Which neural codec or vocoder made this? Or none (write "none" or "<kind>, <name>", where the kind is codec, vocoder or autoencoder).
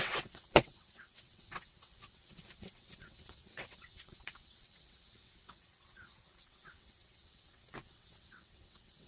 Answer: vocoder, WaveNeXt